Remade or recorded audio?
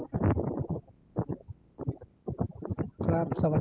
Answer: recorded